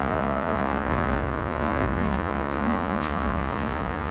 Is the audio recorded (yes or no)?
no